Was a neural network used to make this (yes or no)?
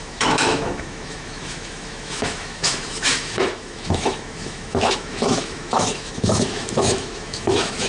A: yes